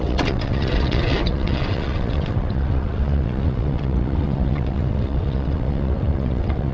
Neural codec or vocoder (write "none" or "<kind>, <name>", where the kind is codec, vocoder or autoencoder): vocoder, WaveNeXt